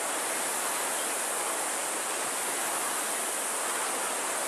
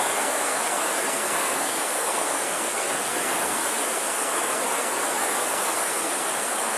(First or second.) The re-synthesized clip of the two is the second